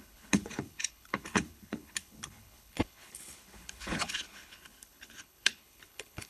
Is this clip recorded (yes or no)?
no